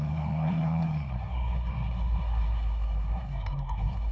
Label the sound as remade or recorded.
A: remade